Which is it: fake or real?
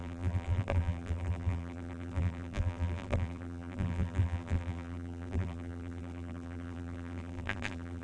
fake